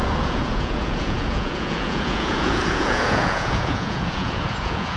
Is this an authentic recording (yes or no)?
no